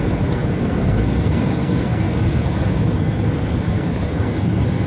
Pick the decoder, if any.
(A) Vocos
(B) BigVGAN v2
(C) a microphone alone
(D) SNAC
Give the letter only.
D